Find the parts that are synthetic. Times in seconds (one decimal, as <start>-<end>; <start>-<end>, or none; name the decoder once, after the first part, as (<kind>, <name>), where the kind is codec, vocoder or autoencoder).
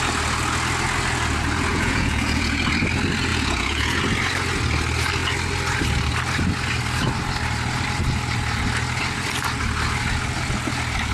1.7-2.6 (vocoder, Vocos); 3.3-4.0